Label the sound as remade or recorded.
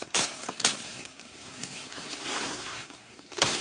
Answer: remade